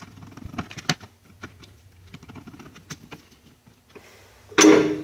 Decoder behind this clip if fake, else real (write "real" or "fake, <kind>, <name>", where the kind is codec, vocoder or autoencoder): real